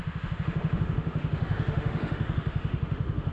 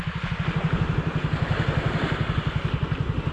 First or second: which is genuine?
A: second